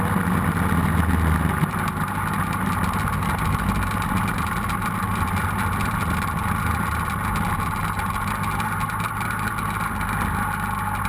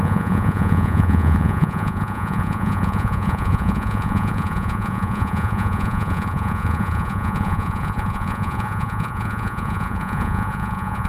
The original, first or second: first